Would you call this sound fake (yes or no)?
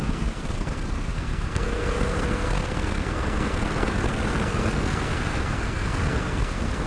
yes